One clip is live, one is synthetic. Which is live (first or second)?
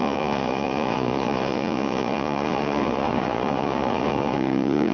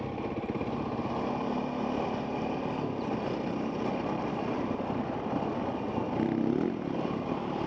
second